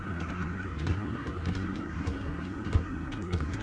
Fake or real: fake